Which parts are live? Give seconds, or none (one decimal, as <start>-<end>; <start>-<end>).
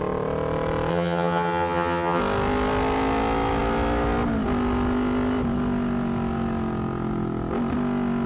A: 0.0-0.9; 2.2-8.3